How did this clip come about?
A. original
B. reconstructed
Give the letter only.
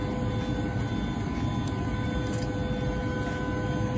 A